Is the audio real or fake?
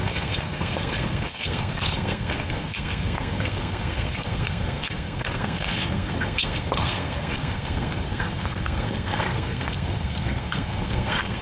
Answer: fake